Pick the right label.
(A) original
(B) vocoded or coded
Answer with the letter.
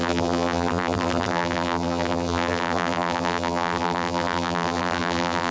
B